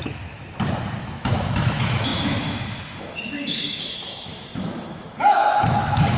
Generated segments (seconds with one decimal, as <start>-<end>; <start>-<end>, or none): 0.0-0.4; 1.0-6.2